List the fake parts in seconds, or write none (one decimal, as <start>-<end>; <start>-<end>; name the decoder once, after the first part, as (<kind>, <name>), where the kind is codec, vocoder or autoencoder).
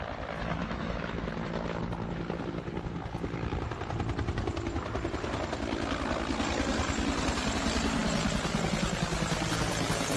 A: 0.6-1.8 (autoencoder, DAC-VAE)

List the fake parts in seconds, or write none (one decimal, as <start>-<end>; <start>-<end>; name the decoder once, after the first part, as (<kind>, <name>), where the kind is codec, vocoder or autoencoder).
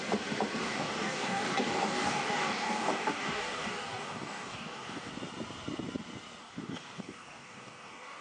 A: 0.6-5.1 (codec, DAC); 6.4-8.2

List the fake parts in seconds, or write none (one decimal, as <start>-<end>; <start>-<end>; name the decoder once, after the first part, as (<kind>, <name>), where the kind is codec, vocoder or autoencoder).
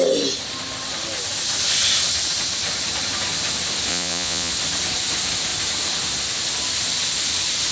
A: 3.9-4.5 (vocoder, Vocos)